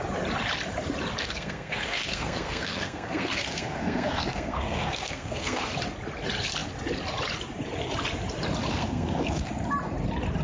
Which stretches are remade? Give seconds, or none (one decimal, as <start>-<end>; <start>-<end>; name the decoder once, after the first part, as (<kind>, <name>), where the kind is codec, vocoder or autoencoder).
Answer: 1.2-5.7 (codec, SNAC); 8.7-9.5

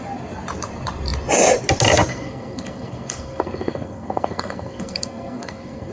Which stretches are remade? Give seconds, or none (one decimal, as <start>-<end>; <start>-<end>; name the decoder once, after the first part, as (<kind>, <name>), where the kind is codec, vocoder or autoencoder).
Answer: 2.1-5.9 (codec, SNAC)

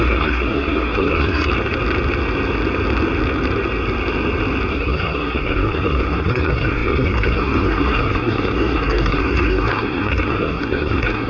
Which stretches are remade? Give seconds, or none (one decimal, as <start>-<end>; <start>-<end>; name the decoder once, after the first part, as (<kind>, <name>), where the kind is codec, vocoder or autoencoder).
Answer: 0.0-1.5 (codec, SNAC); 4.7-11.3

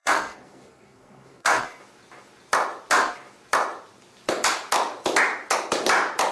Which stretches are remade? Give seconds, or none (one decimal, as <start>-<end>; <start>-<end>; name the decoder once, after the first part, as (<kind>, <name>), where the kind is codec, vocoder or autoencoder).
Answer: 0.0-1.8 (codec, SNAC)

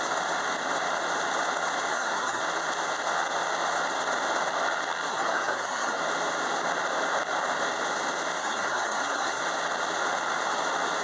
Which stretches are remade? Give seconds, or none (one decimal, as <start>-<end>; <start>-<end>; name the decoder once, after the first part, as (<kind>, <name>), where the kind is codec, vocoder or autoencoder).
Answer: 1.9-2.4 (codec, SNAC); 5.1-6.0; 8.4-9.4